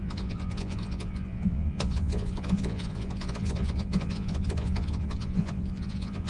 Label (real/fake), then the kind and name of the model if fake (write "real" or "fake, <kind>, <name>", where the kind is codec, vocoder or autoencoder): fake, vocoder, Vocos